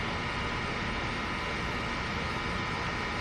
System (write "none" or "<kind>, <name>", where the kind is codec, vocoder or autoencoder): none